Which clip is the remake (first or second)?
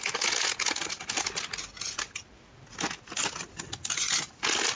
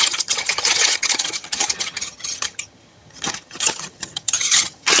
second